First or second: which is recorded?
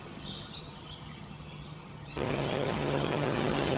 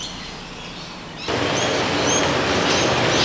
second